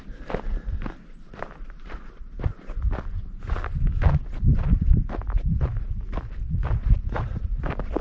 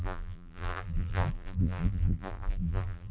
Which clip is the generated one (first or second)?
second